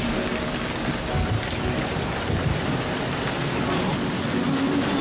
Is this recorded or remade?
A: recorded